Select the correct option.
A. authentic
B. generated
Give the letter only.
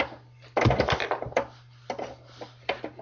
A